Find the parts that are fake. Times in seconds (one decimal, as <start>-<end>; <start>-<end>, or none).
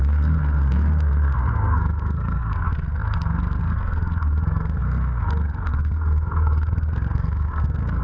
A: 0.0-8.0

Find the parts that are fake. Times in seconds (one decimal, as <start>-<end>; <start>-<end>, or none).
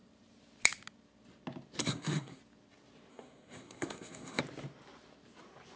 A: 1.8-2.4; 3.1-4.4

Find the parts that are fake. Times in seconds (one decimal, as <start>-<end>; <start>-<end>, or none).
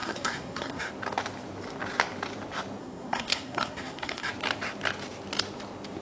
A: 0.0-0.9; 2.8-4.3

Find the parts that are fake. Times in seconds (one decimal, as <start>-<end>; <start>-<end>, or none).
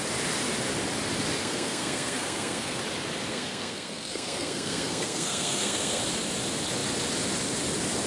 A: 1.4-2.8; 3.3-6.0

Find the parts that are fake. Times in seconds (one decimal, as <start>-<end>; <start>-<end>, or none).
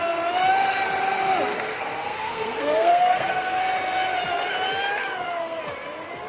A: 1.5-3.6; 5.0-5.6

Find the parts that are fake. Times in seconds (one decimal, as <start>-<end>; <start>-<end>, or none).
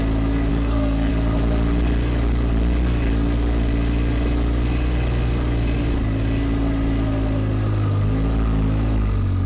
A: 0.5-1.1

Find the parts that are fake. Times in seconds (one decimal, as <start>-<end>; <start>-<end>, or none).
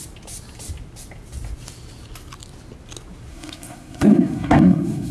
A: 3.3-5.1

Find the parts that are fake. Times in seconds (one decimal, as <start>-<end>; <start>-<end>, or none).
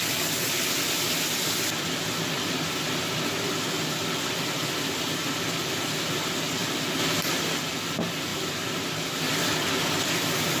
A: none